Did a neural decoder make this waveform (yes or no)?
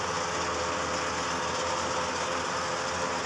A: no